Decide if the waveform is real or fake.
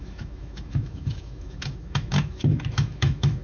fake